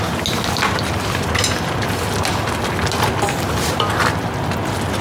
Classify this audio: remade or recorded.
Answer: recorded